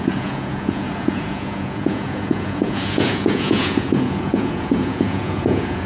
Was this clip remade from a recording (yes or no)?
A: yes